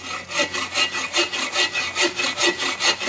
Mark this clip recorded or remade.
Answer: recorded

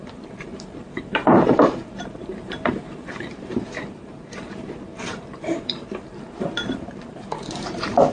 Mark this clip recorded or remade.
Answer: remade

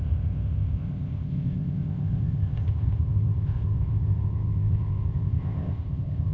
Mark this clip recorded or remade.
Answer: remade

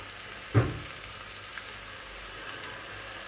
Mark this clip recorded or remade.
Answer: recorded